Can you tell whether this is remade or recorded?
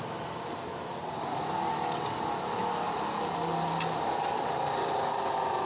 recorded